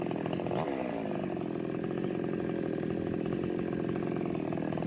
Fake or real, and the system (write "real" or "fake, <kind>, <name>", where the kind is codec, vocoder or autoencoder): real